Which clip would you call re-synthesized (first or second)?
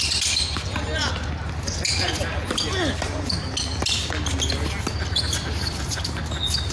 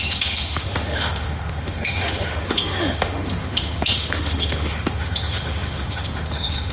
second